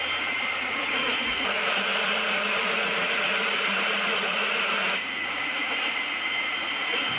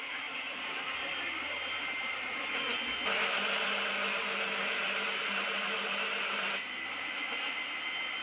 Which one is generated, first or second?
first